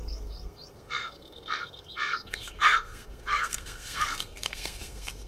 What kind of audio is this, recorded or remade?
remade